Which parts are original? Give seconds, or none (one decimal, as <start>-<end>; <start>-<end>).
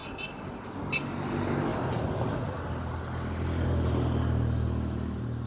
0.0-5.5